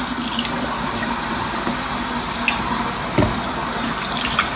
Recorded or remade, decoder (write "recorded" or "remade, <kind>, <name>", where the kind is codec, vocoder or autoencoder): recorded